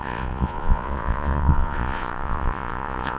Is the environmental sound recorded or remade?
remade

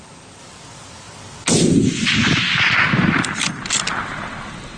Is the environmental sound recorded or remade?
recorded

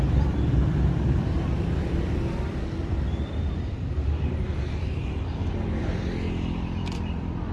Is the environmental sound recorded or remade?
remade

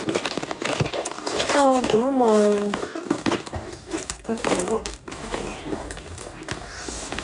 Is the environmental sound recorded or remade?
remade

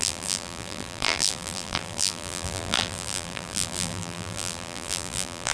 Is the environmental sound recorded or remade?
remade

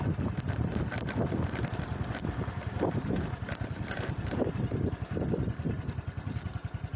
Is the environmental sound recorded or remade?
recorded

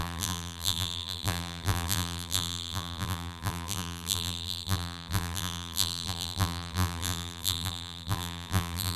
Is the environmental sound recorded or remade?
remade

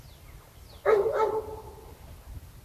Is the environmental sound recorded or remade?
recorded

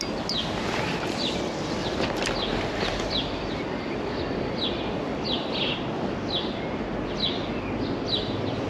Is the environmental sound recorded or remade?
recorded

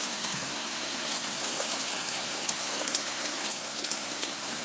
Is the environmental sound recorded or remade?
remade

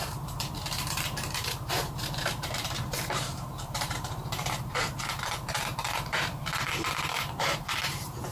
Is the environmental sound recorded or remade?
remade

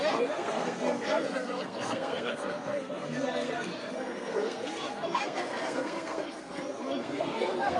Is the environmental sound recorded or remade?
remade